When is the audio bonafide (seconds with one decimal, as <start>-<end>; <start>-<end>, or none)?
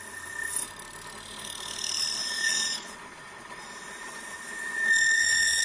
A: 0.0-2.2